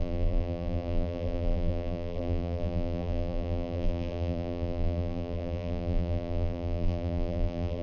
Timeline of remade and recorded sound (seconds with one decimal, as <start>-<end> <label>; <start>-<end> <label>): 0.0-7.8 remade